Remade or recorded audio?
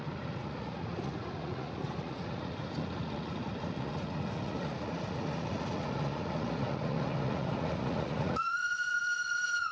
remade